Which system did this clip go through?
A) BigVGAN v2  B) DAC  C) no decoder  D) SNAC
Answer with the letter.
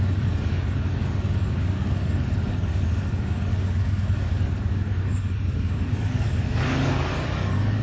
B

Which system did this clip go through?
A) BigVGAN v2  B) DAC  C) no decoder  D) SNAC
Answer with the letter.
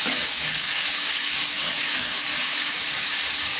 B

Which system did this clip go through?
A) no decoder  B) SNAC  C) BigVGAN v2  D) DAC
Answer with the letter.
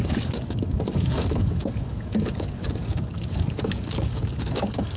D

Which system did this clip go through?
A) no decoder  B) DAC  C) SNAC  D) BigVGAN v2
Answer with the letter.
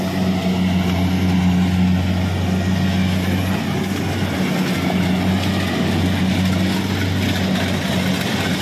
A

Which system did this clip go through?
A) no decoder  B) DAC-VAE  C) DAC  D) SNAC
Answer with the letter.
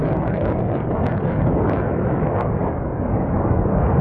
C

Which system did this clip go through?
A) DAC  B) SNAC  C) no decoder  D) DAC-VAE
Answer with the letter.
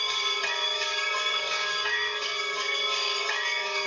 A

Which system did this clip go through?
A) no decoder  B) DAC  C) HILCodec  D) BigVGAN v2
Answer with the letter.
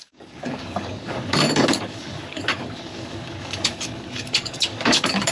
B